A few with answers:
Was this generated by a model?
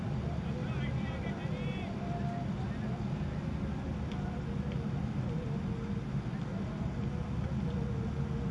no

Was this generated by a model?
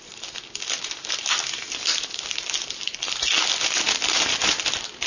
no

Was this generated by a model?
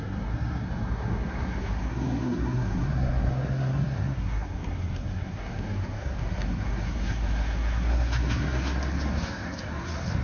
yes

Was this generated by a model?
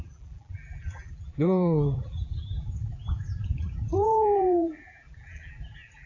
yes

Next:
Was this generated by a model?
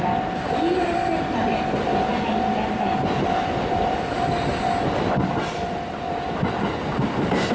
no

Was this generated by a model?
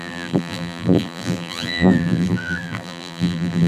yes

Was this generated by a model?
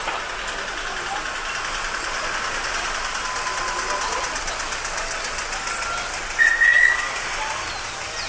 no